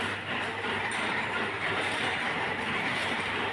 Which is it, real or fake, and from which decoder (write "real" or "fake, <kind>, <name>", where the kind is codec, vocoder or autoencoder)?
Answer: fake, vocoder, BigVGAN v2